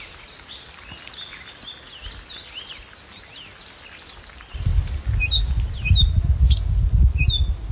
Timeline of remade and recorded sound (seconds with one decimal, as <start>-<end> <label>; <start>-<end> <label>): 0.0-7.7 recorded